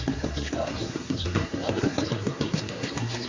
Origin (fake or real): fake